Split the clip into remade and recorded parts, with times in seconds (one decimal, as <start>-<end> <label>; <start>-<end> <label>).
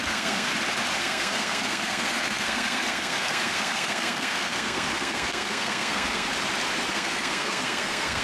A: 0.0-0.5 remade; 0.5-1.0 recorded; 1.0-6.3 remade; 6.3-6.9 recorded; 6.9-8.2 remade